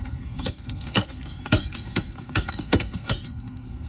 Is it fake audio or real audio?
fake